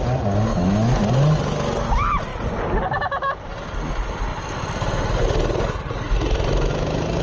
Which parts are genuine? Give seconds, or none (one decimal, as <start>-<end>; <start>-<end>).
0.0-0.5; 1.0-7.2